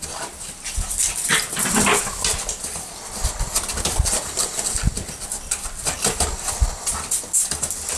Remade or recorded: recorded